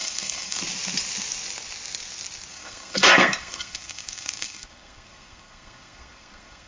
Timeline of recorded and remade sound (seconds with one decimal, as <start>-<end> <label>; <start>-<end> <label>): 0.0-0.6 remade; 0.6-2.5 recorded; 2.5-6.7 remade